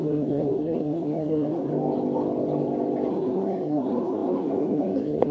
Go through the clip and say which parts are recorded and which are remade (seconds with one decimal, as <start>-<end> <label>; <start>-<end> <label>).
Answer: 0.0-1.7 remade; 1.7-3.1 recorded; 3.1-5.3 remade